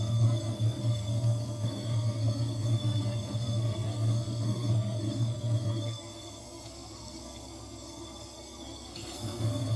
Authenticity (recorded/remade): remade